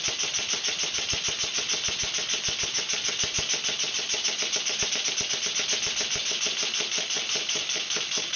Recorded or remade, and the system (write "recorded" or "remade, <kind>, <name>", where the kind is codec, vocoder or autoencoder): recorded